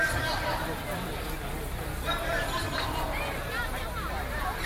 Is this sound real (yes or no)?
yes